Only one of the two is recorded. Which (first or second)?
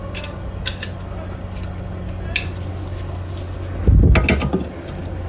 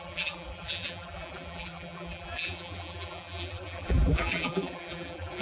first